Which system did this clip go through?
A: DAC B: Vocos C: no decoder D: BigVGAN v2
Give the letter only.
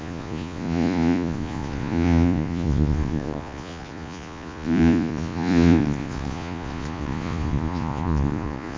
B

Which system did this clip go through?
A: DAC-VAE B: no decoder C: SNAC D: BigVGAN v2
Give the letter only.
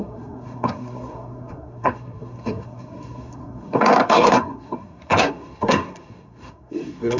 C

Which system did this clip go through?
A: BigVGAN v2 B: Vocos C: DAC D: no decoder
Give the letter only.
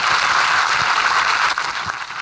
D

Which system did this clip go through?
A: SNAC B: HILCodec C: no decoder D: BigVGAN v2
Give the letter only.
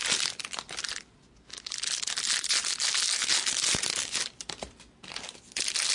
C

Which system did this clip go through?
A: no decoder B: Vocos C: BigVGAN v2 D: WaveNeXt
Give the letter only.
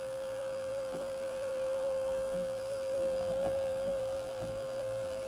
C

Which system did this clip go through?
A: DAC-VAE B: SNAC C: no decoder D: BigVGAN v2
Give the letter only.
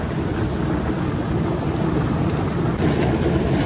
C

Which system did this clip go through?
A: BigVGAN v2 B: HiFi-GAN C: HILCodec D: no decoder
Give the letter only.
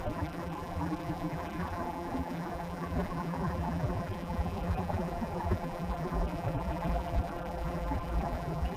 A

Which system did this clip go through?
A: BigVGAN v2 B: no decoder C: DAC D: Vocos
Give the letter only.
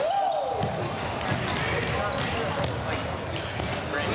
B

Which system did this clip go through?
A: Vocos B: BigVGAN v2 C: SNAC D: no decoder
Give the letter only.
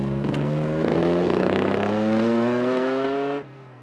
C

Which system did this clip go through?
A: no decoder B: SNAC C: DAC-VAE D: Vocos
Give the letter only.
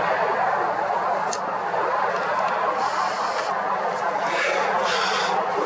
A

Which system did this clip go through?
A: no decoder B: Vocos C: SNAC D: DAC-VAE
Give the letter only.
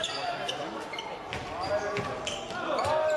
A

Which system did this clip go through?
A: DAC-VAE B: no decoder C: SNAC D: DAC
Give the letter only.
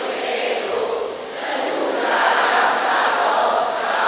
D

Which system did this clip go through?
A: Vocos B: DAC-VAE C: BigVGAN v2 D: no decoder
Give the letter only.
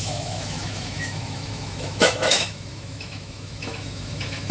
B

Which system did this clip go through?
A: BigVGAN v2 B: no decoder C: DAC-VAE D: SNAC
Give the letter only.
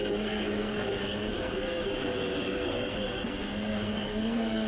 D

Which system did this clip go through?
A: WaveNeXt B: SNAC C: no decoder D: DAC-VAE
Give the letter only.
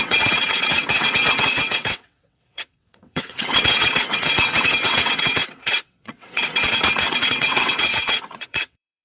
A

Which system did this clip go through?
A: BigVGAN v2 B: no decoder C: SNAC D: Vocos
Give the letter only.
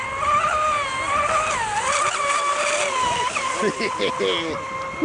B